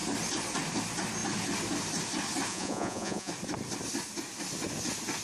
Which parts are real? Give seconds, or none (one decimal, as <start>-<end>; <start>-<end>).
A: 0.0-2.5; 3.3-5.2